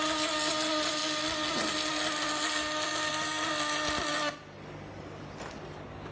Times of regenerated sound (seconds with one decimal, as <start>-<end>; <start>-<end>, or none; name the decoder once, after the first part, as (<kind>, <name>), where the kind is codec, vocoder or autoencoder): none